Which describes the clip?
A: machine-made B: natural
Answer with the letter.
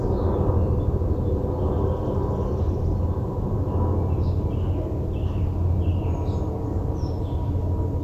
B